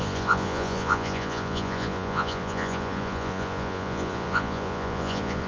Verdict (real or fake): fake